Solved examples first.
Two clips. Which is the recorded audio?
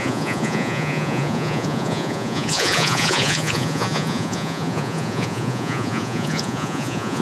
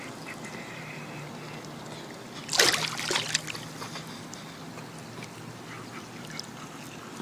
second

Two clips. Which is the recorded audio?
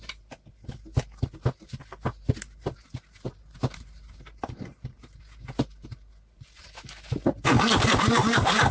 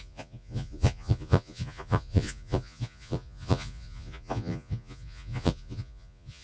first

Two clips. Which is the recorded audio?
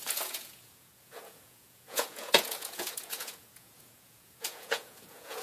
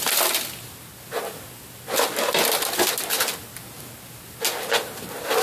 second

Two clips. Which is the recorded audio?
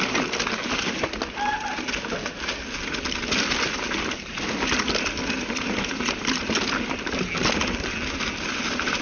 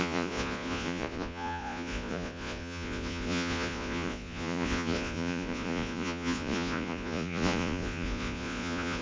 first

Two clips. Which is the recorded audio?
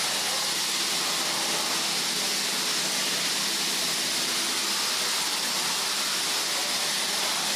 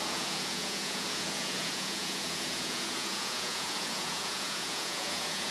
first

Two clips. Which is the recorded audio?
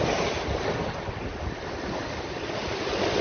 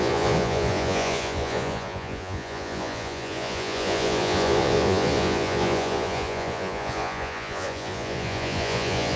first